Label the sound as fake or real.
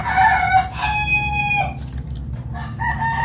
real